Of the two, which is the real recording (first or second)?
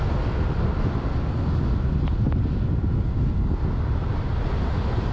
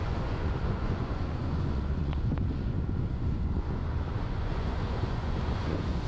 first